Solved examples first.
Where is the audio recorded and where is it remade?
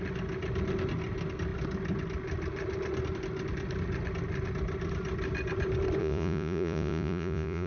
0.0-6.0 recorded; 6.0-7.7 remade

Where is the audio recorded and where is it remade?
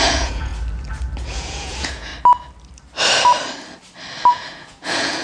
0.0-0.5 remade; 0.5-1.2 recorded; 1.2-2.1 remade; 2.1-4.3 recorded; 4.3-5.2 remade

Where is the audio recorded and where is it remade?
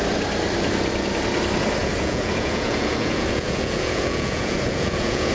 0.0-1.8 recorded; 1.8-5.3 remade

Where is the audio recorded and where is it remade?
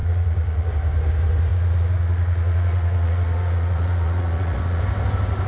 0.0-0.7 remade; 0.7-1.5 recorded; 1.5-4.8 remade; 4.8-5.5 recorded